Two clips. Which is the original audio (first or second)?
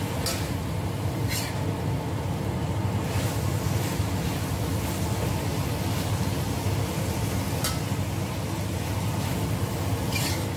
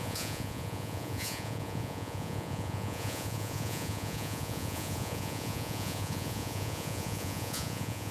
first